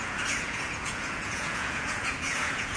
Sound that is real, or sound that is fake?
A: fake